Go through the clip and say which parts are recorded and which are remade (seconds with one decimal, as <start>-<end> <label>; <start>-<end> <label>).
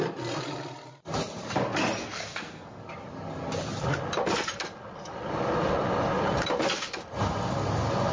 0.0-2.0 recorded; 2.0-2.8 remade; 2.8-8.1 recorded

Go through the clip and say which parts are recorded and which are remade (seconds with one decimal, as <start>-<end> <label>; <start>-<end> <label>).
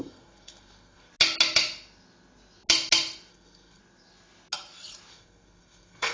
0.0-1.1 remade; 1.1-3.3 recorded; 3.3-3.8 remade; 3.8-5.1 recorded; 5.1-6.1 remade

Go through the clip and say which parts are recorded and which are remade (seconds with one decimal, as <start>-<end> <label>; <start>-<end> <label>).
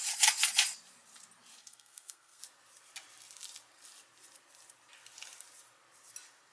0.0-1.6 recorded; 1.6-2.4 remade; 2.4-6.5 recorded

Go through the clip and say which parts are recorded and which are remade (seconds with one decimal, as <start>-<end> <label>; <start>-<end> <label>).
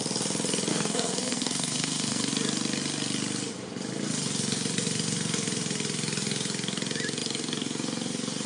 0.0-0.7 recorded; 0.7-2.3 remade; 2.3-8.5 recorded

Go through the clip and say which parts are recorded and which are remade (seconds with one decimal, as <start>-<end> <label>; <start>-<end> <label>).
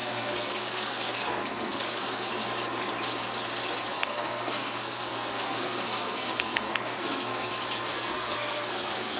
0.0-2.3 remade; 2.3-3.9 recorded; 3.9-7.5 remade; 7.5-7.9 recorded; 7.9-9.2 remade